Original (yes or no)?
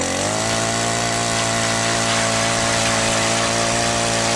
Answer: yes